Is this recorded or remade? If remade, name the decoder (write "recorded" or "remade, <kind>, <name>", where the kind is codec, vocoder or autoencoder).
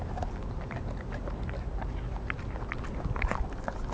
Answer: recorded